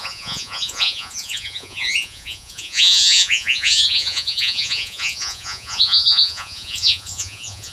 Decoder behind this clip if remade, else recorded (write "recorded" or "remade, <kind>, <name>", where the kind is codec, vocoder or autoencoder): remade, vocoder, Vocos